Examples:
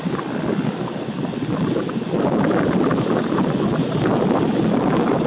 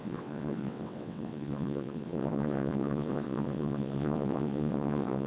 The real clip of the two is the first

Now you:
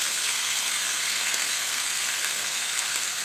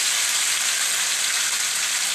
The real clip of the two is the second